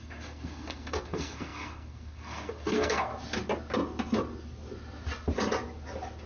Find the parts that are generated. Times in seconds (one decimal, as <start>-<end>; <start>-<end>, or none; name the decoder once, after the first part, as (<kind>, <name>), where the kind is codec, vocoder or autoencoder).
0.0-3.1 (codec, SNAC)